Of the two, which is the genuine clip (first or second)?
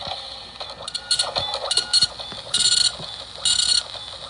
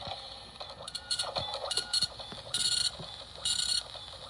first